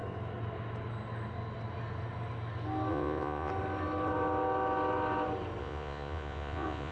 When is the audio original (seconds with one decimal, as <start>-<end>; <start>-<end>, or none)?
0.0-2.9; 3.5-5.6